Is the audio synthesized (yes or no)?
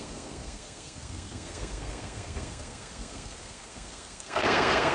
yes